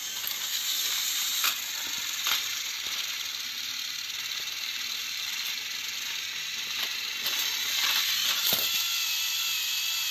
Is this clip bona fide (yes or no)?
yes